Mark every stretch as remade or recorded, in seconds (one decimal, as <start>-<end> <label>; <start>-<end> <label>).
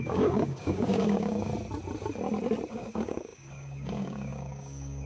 0.0-1.5 remade; 1.5-2.7 recorded; 2.7-5.1 remade